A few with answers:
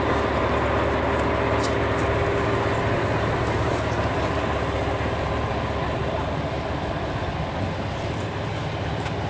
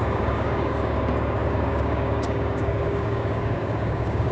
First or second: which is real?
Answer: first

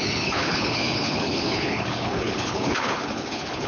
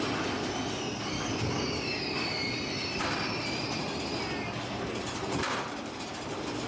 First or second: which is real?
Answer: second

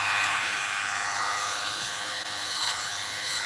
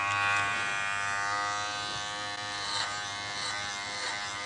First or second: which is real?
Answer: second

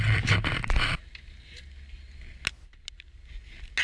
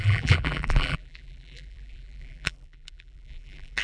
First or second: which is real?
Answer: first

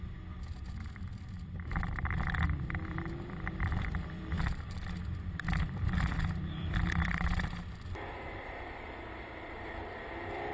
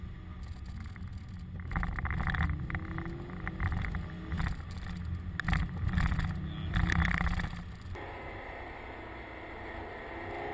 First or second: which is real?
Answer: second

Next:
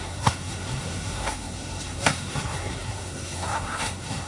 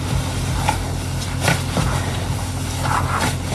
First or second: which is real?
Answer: second